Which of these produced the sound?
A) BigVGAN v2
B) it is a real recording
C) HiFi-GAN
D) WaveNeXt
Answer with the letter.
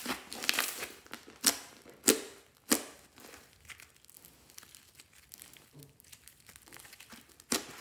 B